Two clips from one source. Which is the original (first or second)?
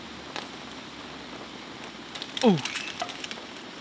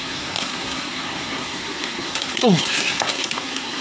first